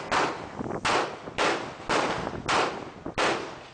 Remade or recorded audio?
recorded